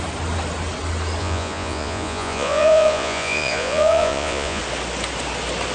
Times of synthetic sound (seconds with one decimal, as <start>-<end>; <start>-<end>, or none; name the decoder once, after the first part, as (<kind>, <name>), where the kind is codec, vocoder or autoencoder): 1.2-4.6 (vocoder, Vocos)